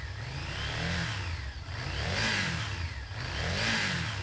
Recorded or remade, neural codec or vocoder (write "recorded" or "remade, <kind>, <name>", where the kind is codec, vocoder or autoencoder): recorded